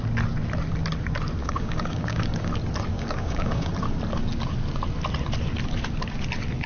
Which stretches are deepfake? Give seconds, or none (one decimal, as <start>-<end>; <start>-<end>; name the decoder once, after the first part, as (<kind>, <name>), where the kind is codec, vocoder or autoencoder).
1.4-2.5 (codec, DAC); 2.9-3.7

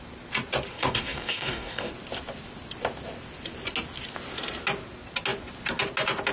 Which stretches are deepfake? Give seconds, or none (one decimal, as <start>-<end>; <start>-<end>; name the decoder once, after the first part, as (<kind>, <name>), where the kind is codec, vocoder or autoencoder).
0.7-1.9 (codec, DAC)

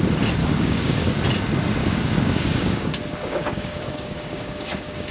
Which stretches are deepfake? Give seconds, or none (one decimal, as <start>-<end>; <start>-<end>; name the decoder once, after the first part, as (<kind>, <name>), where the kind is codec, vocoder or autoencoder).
0.4-1.2 (codec, DAC); 1.8-5.1

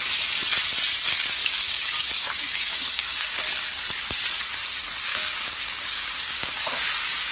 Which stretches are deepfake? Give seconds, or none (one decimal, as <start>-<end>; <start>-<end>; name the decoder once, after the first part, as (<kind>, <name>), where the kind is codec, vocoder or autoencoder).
1.4-3.4 (codec, DAC); 5.1-6.6

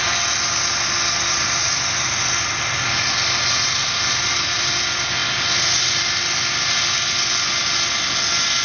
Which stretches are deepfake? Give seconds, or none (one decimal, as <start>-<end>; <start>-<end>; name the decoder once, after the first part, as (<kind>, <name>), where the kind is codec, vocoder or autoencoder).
none

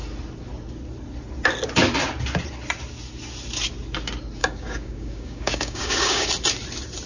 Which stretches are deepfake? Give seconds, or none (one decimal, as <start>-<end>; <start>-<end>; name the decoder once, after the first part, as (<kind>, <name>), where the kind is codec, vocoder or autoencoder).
4.4-6.3 (codec, DAC)

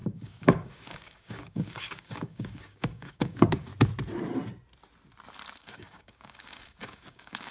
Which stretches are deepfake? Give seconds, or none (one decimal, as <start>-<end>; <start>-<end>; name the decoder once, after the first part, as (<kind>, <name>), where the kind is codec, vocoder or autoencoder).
0.0-3.7 (codec, DAC); 5.6-7.5

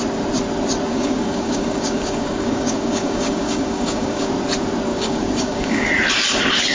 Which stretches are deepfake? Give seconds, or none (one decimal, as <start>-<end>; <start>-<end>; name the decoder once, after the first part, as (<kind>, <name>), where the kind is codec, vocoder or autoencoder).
0.9-4.3 (codec, DAC); 4.9-5.9